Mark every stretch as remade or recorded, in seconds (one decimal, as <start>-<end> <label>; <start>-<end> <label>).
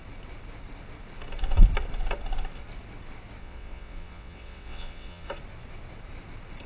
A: 0.0-3.4 recorded; 3.4-5.3 remade; 5.3-6.7 recorded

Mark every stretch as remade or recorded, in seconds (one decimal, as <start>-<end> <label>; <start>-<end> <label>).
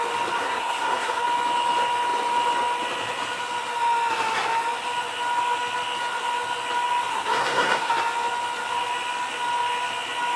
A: 0.0-0.4 recorded; 0.4-1.2 remade; 1.2-7.1 recorded; 7.1-7.9 remade; 7.9-10.4 recorded